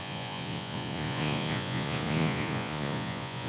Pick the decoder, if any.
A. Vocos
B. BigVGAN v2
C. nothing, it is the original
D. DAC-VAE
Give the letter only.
A